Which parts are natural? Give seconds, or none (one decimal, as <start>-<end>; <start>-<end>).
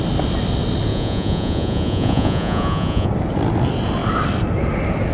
0.0-0.9; 3.1-5.1